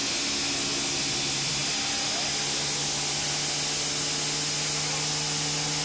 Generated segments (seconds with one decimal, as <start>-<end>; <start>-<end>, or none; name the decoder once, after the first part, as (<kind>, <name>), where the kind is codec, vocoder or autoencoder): none